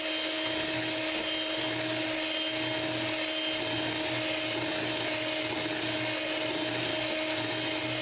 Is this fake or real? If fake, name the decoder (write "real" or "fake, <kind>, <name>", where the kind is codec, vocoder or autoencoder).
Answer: real